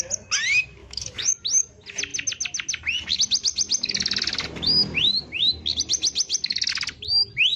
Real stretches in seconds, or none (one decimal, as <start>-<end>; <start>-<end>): 0.0-0.8; 1.3-7.6